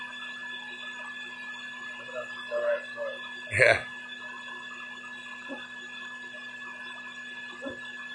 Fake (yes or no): no